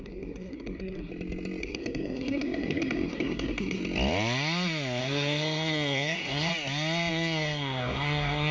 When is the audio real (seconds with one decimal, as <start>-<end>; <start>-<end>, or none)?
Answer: 1.1-1.6; 3.8-5.0; 6.5-7.1